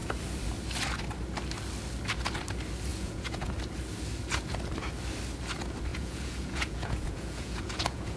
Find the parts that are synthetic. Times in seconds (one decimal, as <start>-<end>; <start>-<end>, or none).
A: 2.9-3.5; 5.9-8.2